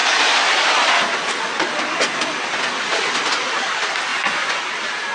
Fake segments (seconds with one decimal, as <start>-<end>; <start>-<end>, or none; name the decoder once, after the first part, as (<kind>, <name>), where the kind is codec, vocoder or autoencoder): 4.1-4.6 (vocoder, Vocos)

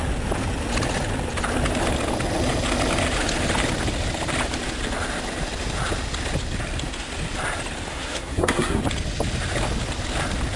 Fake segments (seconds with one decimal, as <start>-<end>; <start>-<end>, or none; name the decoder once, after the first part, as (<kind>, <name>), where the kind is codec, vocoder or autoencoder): 7.9-8.8 (codec, SNAC)

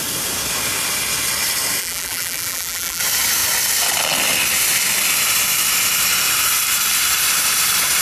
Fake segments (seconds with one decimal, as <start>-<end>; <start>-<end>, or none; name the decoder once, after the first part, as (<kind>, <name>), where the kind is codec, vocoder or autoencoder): 1.8-3.0 (vocoder, BigVGAN v2)

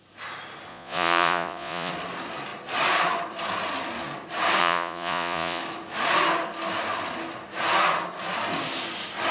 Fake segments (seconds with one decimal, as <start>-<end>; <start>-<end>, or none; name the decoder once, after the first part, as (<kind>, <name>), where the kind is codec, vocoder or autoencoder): 0.7-1.9 (vocoder, Vocos); 4.6-5.6

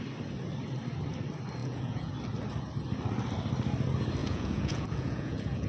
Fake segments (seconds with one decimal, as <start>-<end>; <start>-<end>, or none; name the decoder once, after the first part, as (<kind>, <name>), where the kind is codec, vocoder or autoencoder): 1.6-2.1 (vocoder, Vocos); 4.2-5.7